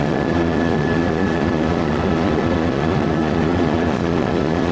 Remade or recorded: remade